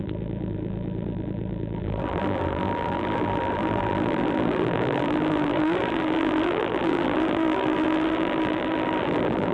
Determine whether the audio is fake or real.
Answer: fake